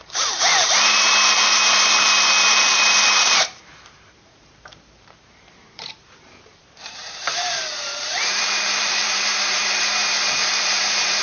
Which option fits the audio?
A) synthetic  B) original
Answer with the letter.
A